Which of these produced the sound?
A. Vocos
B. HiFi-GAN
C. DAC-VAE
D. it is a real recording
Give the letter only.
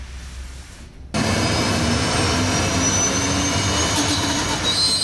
D